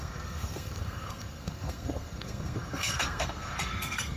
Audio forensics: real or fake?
fake